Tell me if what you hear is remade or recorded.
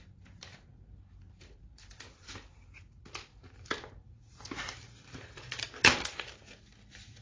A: remade